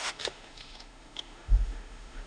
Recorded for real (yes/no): no